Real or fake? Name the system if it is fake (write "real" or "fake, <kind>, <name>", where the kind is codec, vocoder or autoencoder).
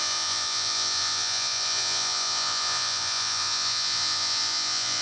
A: fake, vocoder, Vocos